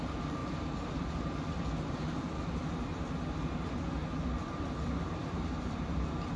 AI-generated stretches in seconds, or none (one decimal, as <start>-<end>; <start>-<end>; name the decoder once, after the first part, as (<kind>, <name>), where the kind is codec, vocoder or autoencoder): 0.4-2.5 (vocoder, BigVGAN v2); 4.4-6.4